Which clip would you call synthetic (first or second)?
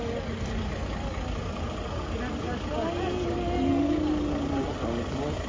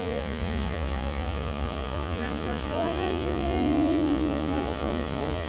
second